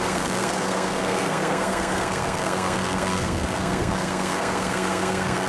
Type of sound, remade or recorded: remade